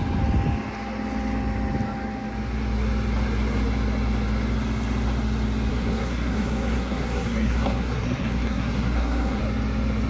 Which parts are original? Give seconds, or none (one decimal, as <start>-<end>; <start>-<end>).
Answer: 0.0-5.7; 9.4-10.1